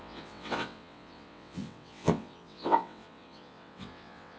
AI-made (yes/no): yes